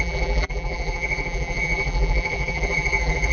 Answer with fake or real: fake